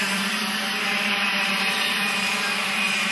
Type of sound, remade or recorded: remade